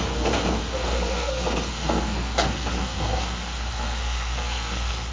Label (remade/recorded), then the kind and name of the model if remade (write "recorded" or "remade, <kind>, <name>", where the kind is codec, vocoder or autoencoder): remade, codec, SNAC